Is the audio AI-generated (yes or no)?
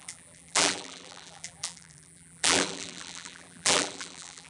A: yes